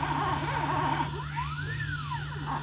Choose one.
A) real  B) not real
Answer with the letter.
A